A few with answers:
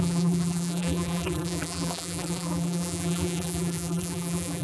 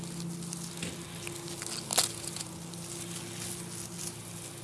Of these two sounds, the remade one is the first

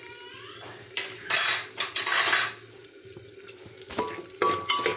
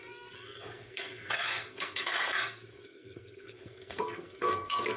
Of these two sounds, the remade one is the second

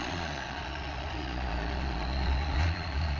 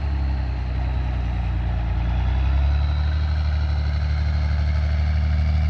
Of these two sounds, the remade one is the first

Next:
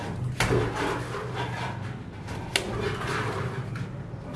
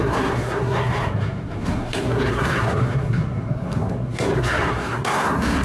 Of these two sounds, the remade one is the second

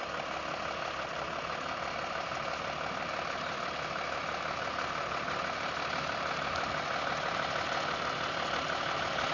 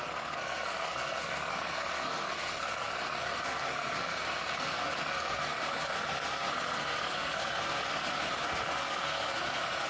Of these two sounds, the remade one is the second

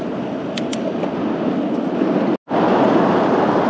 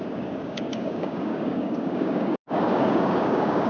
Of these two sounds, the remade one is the second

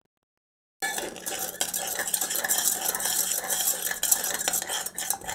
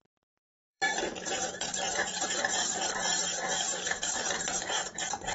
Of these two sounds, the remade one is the second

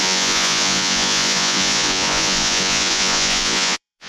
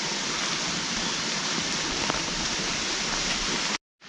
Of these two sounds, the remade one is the first